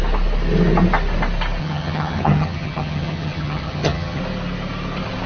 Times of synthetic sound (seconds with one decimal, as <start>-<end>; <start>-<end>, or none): 1.6-4.2